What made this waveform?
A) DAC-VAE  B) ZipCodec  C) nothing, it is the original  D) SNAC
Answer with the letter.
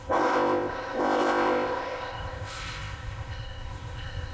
B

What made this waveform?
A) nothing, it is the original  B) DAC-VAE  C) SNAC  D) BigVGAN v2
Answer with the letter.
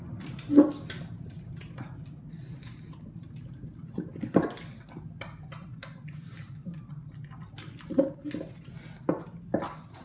A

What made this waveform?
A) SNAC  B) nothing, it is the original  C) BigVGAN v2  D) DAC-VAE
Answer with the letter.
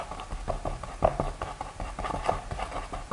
B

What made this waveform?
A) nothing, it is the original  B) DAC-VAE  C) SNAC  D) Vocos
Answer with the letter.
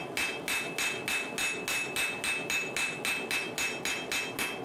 A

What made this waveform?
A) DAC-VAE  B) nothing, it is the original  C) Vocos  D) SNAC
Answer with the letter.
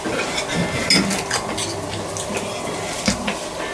B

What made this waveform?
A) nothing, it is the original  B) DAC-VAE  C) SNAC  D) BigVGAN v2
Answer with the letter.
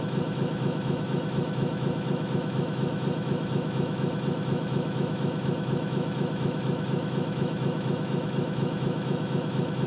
B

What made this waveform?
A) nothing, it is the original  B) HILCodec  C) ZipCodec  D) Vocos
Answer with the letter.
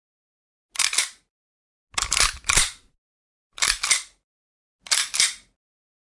A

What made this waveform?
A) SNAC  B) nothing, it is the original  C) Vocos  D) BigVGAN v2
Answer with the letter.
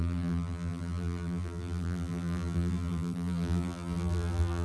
D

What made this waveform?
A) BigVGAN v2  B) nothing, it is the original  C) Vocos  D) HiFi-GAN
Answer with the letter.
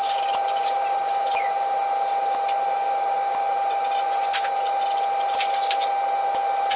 B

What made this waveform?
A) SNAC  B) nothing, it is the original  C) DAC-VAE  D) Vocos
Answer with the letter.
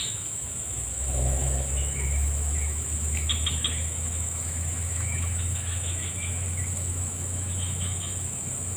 C